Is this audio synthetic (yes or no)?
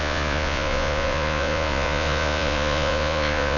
yes